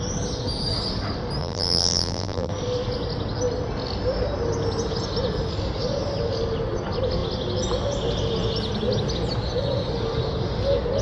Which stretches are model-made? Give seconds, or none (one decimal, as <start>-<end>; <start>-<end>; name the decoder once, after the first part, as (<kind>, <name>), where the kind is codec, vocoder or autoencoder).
1.4-2.5 (vocoder, BigVGAN v2)